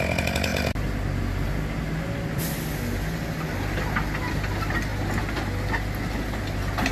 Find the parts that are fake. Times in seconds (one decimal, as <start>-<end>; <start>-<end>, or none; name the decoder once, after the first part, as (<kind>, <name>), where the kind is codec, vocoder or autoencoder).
none